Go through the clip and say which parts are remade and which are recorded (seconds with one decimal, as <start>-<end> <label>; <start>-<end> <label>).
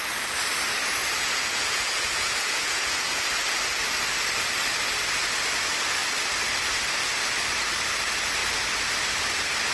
0.0-1.0 recorded; 1.0-3.3 remade; 3.3-9.7 recorded